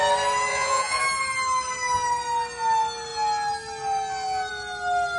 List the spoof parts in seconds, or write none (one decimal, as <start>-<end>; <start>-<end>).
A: 0.5-1.0